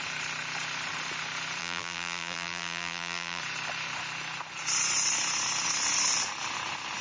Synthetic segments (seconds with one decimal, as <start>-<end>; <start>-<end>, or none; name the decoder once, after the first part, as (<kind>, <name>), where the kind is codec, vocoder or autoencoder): 1.6-3.4 (vocoder, BigVGAN v2)